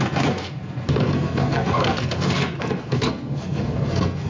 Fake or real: fake